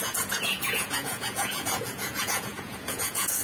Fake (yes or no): yes